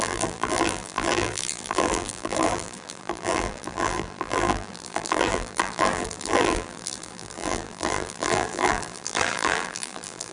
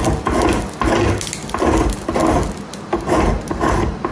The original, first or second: second